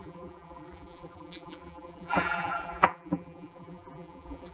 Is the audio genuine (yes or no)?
no